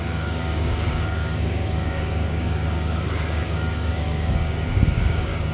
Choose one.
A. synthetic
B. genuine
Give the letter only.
A